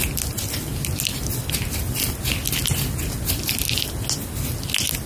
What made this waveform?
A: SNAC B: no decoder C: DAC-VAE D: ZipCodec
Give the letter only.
B